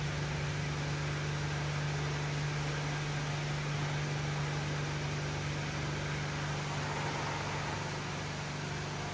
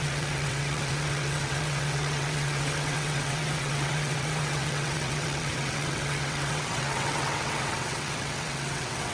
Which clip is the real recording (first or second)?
first